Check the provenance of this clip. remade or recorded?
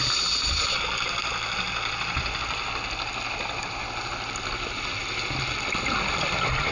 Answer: recorded